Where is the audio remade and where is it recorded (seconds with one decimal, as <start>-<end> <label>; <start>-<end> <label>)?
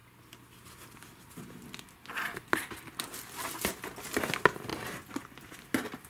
0.0-6.1 recorded